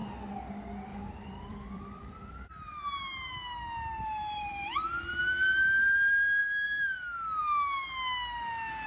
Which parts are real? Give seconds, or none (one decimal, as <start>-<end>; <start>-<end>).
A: 0.0-0.9; 2.3-4.2; 5.2-8.9